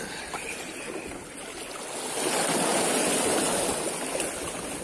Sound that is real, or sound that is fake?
real